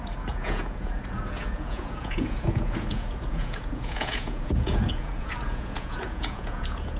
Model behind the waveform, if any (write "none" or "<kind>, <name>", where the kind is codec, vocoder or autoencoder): vocoder, Vocos